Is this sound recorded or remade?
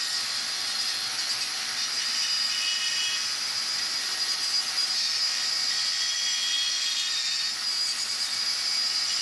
recorded